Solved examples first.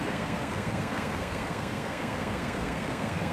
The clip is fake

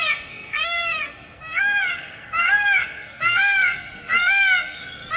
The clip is fake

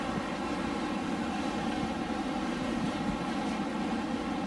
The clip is real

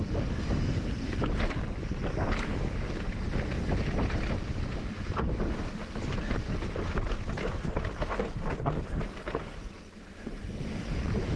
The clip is real